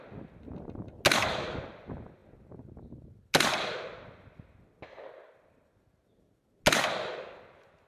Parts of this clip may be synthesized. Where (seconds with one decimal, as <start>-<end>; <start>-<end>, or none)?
none